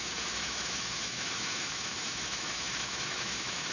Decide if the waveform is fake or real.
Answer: fake